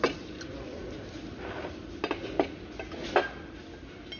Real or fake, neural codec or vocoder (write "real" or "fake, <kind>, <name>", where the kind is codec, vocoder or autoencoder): real